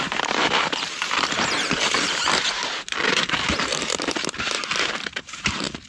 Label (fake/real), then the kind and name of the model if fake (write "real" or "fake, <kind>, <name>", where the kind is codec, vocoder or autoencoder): fake, vocoder, BigVGAN v2